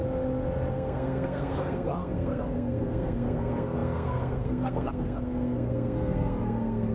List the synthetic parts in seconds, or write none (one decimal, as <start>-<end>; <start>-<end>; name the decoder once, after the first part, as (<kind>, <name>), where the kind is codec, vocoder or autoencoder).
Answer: 0.7-6.9 (codec, SNAC)